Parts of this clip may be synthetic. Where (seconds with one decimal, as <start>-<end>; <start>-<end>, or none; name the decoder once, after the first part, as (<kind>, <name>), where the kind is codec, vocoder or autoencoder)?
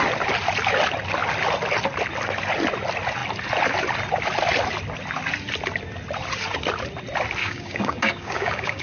7.4-8.8 (codec, DAC)